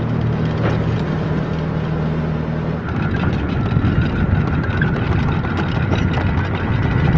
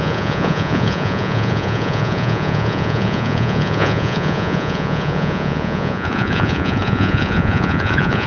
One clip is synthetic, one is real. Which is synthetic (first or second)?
second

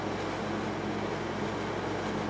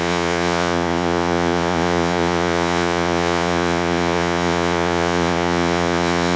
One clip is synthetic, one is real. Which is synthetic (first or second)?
second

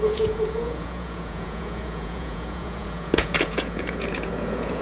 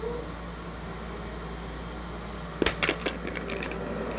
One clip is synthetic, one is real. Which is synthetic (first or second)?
first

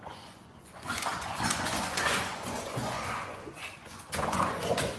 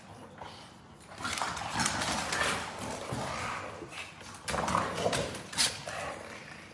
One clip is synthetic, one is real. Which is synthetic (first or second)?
first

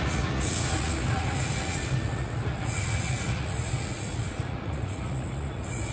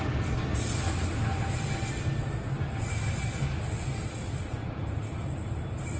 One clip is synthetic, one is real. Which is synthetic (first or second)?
first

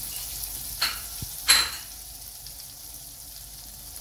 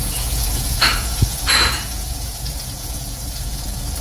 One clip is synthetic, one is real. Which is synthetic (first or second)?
second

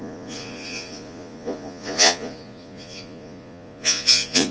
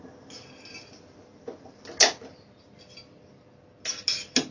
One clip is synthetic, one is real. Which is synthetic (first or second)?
first